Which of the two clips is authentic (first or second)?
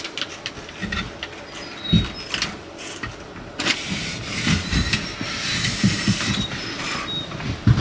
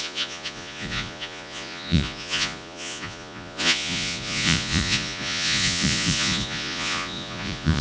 first